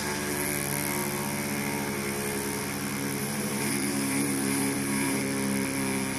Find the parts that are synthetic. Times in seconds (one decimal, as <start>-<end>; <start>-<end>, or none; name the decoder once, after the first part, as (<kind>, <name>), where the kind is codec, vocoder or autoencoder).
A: 3.2-5.2 (vocoder, BigVGAN v2)